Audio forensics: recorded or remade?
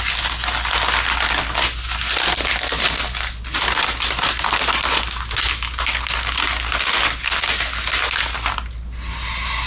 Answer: recorded